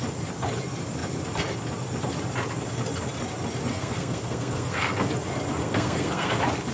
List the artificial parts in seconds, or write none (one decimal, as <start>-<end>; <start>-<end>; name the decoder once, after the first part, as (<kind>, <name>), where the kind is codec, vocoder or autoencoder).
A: 3.7-5.1 (codec, SNAC); 5.6-6.3